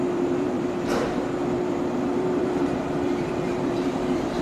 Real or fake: fake